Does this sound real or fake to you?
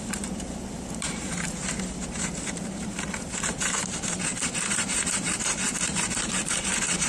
fake